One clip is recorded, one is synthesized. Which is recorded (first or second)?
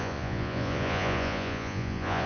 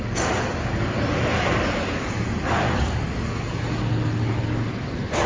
second